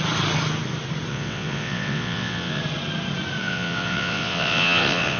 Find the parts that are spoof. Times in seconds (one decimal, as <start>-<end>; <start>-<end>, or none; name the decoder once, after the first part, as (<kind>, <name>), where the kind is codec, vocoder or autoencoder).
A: 1.1-2.6 (vocoder, WaveNeXt); 3.4-5.2